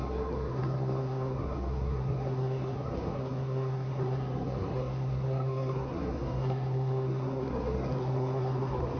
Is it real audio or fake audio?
fake